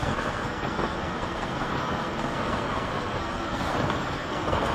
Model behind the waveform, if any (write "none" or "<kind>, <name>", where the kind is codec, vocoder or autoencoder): codec, SNAC